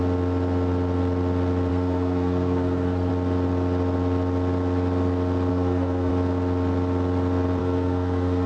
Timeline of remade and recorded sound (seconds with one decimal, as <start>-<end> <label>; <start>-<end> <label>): 0.0-1.7 recorded; 1.7-3.1 remade; 3.1-5.5 recorded; 5.5-6.1 remade; 6.1-7.6 recorded; 7.6-8.5 remade